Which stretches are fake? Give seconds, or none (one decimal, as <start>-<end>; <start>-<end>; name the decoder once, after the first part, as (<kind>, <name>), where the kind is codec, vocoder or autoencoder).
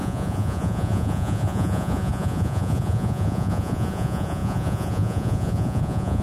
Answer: 0.0-6.2 (vocoder, Vocos)